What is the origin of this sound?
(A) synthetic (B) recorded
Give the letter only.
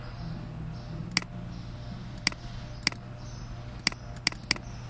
B